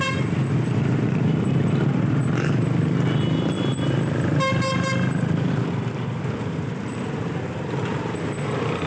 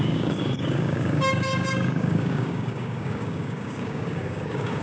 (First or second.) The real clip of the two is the first